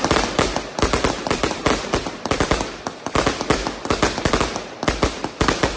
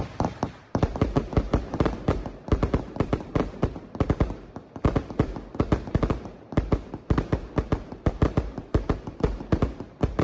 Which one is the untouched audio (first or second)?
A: first